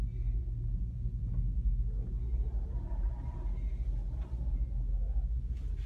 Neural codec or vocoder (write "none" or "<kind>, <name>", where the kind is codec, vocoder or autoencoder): none